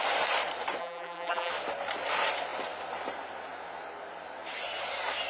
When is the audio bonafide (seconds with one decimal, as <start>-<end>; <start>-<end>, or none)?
0.0-0.8; 1.5-5.3